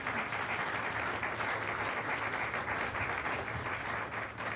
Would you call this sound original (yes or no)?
yes